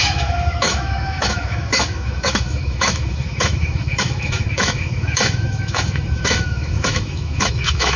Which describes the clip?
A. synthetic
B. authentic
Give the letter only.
A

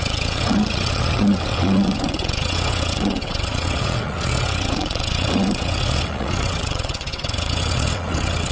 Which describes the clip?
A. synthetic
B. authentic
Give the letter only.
A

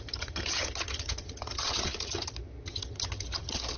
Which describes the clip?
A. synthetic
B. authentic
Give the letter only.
A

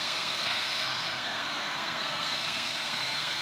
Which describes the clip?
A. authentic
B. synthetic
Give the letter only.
B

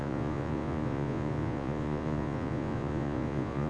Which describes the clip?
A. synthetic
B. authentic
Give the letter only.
A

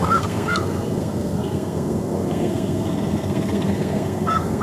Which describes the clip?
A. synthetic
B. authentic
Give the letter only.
A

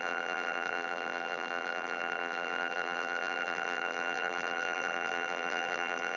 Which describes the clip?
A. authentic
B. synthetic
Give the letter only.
B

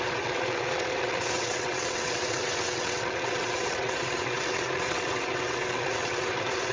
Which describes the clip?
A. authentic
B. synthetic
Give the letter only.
B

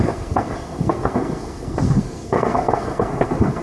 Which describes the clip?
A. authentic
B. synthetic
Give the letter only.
B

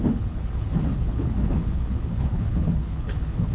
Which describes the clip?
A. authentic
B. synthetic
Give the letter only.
B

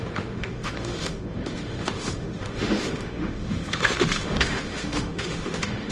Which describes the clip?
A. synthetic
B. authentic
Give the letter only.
A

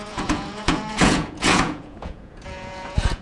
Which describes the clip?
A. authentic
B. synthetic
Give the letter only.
B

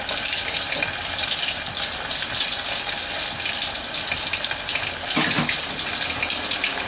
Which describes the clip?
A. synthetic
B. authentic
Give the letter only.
B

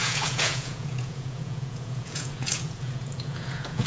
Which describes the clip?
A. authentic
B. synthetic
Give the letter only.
B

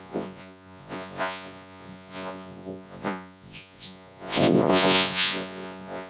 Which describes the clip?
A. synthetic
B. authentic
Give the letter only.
A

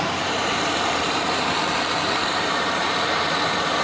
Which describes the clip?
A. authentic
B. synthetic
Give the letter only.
B